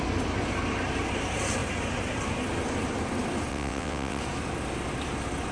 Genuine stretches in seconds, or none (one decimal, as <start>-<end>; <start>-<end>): 0.0-3.5; 4.2-5.5